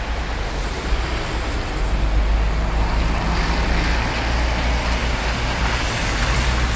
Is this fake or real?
real